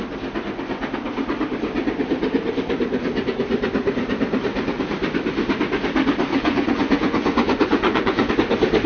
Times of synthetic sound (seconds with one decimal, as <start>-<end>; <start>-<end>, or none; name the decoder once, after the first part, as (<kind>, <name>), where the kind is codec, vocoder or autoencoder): 6.3-8.3 (vocoder, Vocos)